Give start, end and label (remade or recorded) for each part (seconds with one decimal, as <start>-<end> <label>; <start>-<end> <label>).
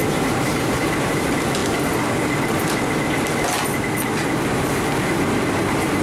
0.0-0.6 remade; 0.6-6.0 recorded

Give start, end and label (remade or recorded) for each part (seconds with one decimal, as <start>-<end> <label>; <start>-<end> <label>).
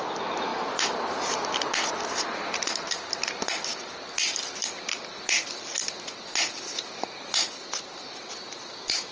0.0-9.1 recorded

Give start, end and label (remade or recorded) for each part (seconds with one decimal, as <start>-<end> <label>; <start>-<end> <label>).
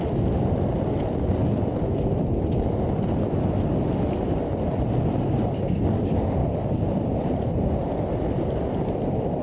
0.0-6.4 recorded; 6.4-7.2 remade; 7.2-9.4 recorded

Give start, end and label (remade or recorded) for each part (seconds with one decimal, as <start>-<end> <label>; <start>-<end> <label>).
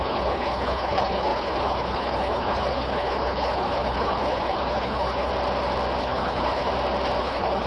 0.0-5.3 remade; 5.3-6.0 recorded; 6.0-6.7 remade; 6.7-7.2 recorded; 7.2-7.7 remade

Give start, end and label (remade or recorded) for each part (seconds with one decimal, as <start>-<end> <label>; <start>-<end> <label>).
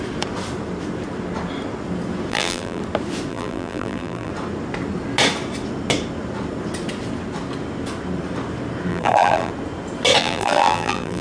0.0-2.3 recorded; 2.3-2.8 remade; 2.8-3.3 recorded; 3.3-4.3 remade; 4.3-8.9 recorded; 8.9-9.5 remade; 9.5-10.2 recorded; 10.2-11.2 remade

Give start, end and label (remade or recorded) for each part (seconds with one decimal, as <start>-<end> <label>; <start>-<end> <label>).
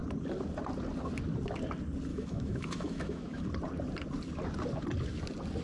0.0-2.1 recorded; 2.1-3.4 remade; 3.4-5.6 recorded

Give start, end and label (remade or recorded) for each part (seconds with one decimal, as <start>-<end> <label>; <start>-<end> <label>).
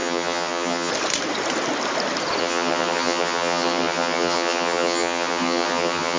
0.0-0.9 remade; 0.9-2.4 recorded; 2.4-6.2 remade